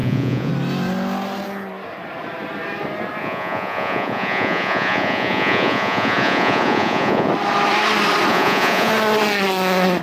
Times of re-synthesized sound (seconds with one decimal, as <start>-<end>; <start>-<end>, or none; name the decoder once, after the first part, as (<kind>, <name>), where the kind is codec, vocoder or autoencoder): 0.0-0.5 (vocoder, Vocos); 3.2-7.3; 8.3-8.9